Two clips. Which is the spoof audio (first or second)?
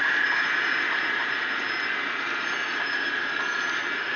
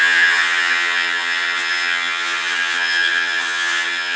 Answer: second